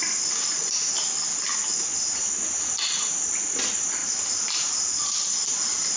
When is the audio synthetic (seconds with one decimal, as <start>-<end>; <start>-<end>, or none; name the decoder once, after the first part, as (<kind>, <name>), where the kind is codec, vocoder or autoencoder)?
none